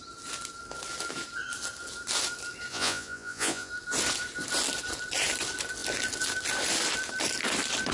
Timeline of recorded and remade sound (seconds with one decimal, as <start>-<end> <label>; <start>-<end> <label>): 0.0-2.7 recorded; 2.7-3.7 remade; 3.7-7.9 recorded